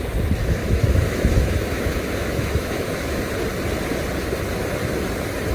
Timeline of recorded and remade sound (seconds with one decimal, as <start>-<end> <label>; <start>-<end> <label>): 0.0-0.6 recorded; 0.6-3.2 remade; 3.2-5.5 recorded